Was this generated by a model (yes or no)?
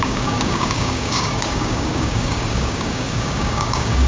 yes